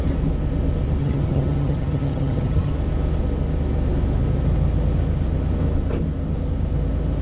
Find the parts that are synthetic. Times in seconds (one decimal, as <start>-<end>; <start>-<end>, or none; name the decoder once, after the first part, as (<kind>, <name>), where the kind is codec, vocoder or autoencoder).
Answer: 1.0-2.7 (vocoder, HiFi-GAN)